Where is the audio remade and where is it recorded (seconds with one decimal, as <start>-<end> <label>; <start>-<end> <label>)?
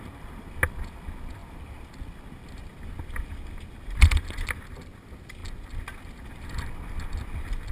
0.0-7.7 recorded